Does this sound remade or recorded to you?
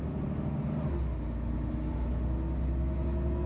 recorded